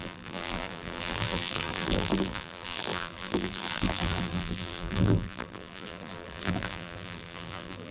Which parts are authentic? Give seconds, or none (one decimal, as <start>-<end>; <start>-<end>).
none